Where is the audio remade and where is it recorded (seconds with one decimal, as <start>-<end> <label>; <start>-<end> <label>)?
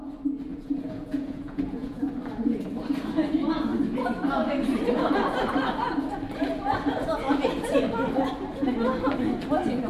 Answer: 0.0-0.5 recorded; 0.5-2.1 remade; 2.1-9.9 recorded